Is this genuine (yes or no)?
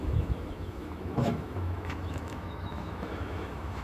no